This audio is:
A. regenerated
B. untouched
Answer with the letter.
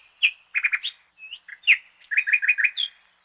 B